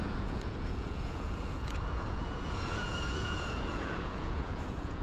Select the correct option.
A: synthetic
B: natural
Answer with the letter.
A